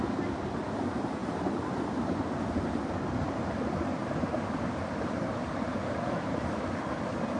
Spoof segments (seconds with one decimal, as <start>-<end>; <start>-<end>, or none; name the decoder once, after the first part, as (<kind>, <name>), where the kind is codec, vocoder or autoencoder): 4.0-6.7 (vocoder, BigVGAN v2)